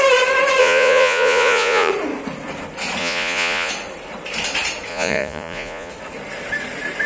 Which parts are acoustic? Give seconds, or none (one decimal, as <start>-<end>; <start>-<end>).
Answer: 0.0-0.6; 1.9-3.0; 3.7-4.9; 5.9-7.1